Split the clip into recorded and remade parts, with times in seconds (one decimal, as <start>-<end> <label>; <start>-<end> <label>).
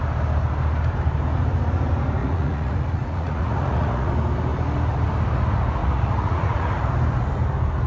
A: 0.0-2.2 recorded; 2.2-4.1 remade; 4.1-5.8 recorded; 5.8-6.9 remade; 6.9-7.9 recorded